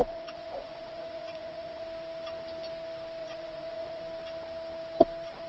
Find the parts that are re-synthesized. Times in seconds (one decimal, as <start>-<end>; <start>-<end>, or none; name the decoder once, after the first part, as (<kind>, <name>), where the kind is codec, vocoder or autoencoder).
0.0-1.8 (vocoder, Vocos); 3.2-4.0